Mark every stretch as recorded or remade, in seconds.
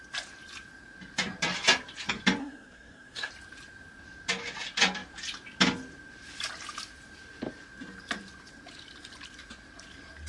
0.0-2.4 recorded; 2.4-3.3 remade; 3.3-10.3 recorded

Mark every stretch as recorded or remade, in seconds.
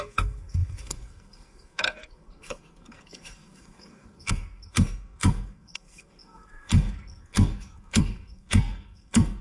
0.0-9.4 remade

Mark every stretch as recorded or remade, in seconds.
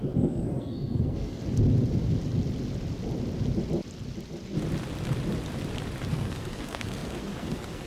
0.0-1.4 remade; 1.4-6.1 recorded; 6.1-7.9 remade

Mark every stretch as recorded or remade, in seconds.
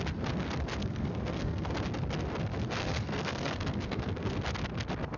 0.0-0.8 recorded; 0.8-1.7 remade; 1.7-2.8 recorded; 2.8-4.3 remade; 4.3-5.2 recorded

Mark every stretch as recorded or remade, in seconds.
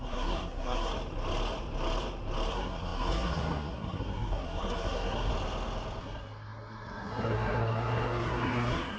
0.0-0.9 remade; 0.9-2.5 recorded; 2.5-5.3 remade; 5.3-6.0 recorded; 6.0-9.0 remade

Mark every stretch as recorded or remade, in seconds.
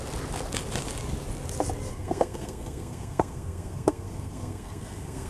0.0-1.9 recorded; 1.9-5.3 remade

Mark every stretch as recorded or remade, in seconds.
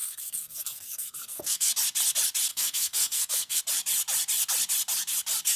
0.0-1.7 remade; 1.7-2.5 recorded; 2.5-3.6 remade; 3.6-5.6 recorded